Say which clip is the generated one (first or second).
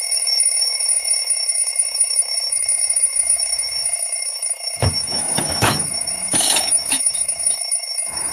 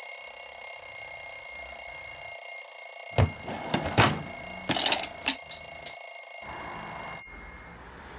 first